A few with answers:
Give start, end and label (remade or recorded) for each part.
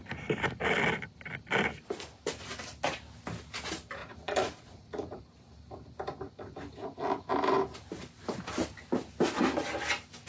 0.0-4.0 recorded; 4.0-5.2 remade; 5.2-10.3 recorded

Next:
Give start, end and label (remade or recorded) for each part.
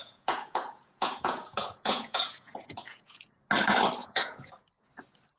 0.0-3.2 remade; 3.2-4.0 recorded; 4.0-4.5 remade; 4.5-5.4 recorded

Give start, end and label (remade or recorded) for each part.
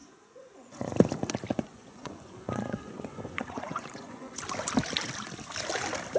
0.0-0.9 remade; 0.9-1.5 recorded; 1.5-4.4 remade; 4.4-6.2 recorded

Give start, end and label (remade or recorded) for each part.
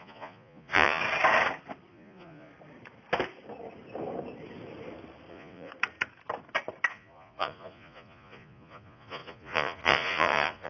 0.0-1.0 remade; 1.0-1.9 recorded; 1.9-2.5 remade; 2.5-5.3 recorded; 5.3-5.7 remade; 5.7-6.9 recorded; 6.9-10.7 remade